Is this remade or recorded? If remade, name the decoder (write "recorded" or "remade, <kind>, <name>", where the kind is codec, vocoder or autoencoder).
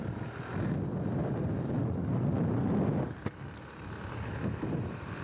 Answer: recorded